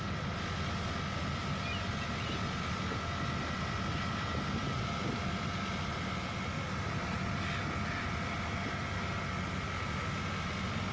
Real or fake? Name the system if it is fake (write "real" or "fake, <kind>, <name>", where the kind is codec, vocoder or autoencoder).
real